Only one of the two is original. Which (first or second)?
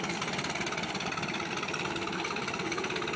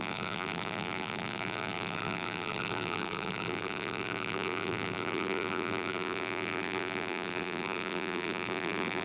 first